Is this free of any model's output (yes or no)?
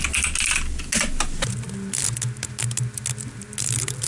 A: yes